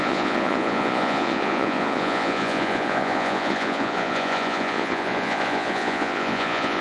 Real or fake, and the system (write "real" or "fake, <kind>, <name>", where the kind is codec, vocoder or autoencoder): fake, vocoder, Vocos